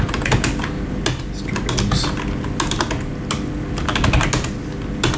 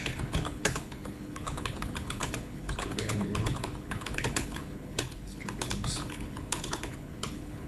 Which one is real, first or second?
first